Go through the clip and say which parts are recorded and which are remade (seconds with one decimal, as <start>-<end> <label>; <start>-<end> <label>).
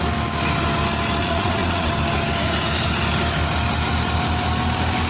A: 0.0-1.2 recorded; 1.2-1.9 remade; 1.9-5.1 recorded